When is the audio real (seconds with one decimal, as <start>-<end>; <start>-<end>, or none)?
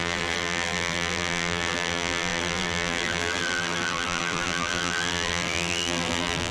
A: none